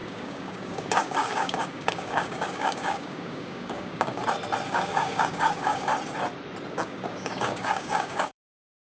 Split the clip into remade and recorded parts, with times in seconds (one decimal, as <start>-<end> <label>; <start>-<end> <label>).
0.0-4.2 remade; 4.2-4.7 recorded; 4.7-5.9 remade; 5.9-6.7 recorded; 6.7-8.9 remade